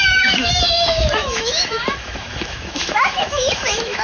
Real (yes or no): no